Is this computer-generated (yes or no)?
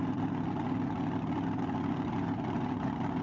no